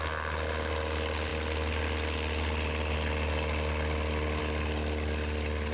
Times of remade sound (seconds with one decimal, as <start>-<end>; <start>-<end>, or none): none